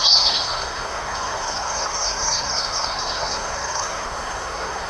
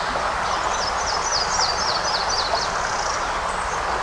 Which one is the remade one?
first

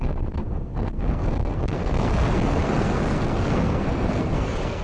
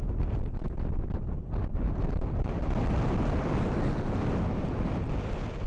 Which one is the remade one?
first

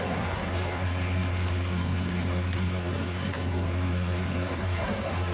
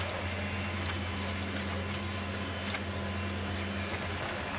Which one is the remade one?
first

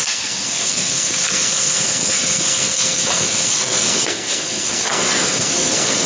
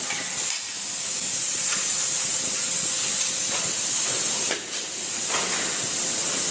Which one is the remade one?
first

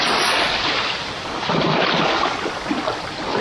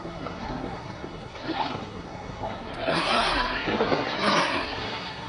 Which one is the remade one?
second